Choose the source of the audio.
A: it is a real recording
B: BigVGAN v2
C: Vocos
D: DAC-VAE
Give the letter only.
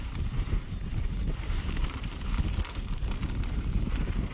B